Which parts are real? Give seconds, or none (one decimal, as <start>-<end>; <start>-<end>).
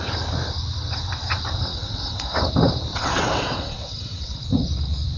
0.0-1.7; 2.5-2.9; 4.4-5.2